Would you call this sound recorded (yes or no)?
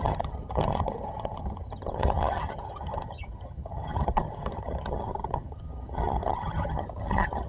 no